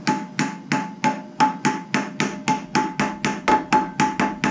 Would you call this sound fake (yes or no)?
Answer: no